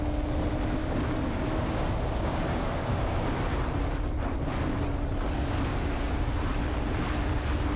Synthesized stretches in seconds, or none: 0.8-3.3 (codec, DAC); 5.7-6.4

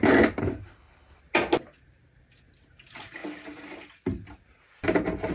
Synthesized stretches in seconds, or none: 0.4-1.2 (codec, HILCodec)

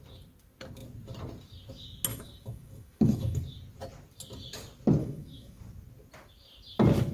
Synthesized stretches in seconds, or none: 2.1-3.4 (autoencoder, DAC-VAE); 5.0-5.6

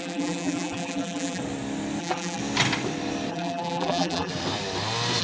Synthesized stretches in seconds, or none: 0.0-1.4 (vocoder, BigVGAN v2); 2.0-2.4; 3.3-4.3

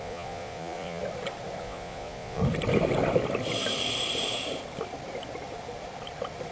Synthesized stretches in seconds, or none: 0.0-1.0 (vocoder, Vocos); 1.6-2.4

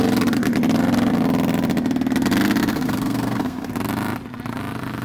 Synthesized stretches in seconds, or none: 2.7-3.7 (codec, SNAC)

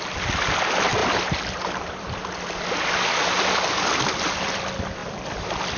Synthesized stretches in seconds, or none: 1.0-2.3 (vocoder, BigVGAN v2); 5.0-5.8

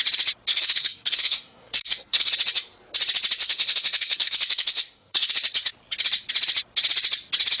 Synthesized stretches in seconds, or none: 0.5-2.3 (codec, SNAC); 3.4-5.3